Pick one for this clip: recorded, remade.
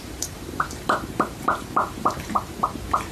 remade